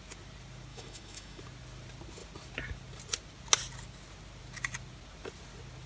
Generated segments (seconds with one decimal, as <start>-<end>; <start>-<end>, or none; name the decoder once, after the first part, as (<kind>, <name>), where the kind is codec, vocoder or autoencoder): 0.7-1.4 (autoencoder, DAC-VAE)